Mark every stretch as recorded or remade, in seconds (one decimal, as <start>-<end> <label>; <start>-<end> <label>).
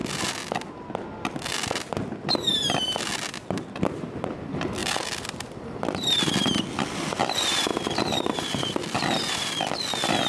0.0-4.8 recorded; 4.8-7.3 remade; 7.3-7.7 recorded; 7.7-9.6 remade; 9.6-10.3 recorded